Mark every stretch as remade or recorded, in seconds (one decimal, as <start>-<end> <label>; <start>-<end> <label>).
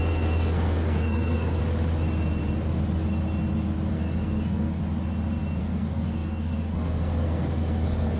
0.0-1.6 remade; 1.6-3.9 recorded; 3.9-4.8 remade; 4.8-5.6 recorded; 5.6-8.2 remade